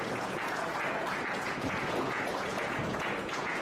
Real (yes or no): no